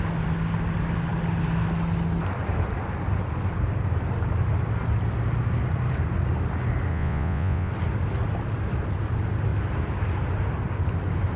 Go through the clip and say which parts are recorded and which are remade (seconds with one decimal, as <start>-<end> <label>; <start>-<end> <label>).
0.0-6.9 recorded; 6.9-7.7 remade; 7.7-11.4 recorded